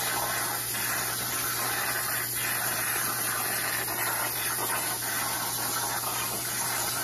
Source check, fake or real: real